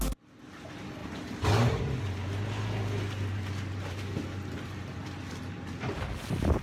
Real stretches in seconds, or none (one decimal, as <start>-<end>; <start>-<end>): 0.0-1.0; 1.8-6.6